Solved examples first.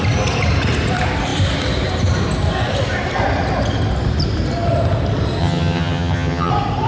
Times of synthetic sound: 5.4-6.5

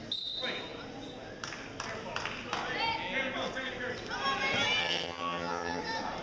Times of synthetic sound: 4.8-5.8

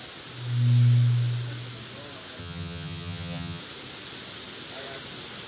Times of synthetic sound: 2.4-3.6

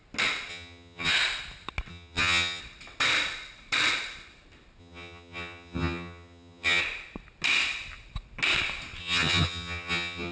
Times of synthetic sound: 0.5-1.1; 1.9-2.6; 4.8-6.8; 9.0-10.3